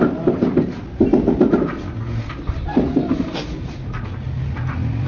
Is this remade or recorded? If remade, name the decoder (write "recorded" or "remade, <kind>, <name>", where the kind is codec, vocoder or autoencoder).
recorded